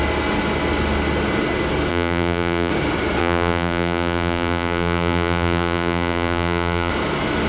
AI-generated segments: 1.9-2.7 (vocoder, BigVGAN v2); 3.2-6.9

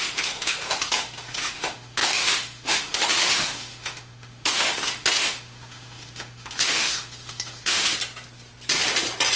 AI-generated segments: 0.0-7.9 (autoencoder, DAC-VAE)

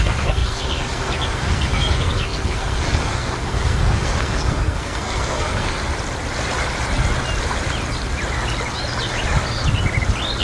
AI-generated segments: 0.0-5.8 (codec, SNAC)

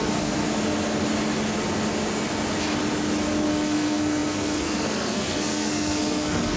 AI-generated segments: 0.0-0.4 (codec, SNAC); 3.5-6.6

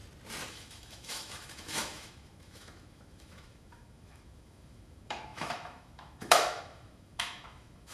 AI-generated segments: 0.5-7.9 (autoencoder, DAC-VAE)